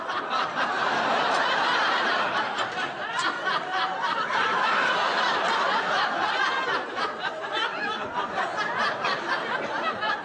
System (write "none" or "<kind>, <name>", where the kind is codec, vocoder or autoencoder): vocoder, BigVGAN v2